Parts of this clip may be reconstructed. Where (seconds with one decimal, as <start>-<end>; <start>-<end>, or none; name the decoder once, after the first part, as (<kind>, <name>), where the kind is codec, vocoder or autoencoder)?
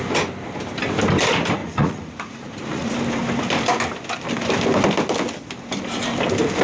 1.6-2.9 (vocoder, Vocos)